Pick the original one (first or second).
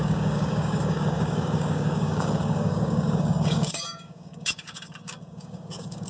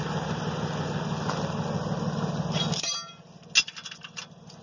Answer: second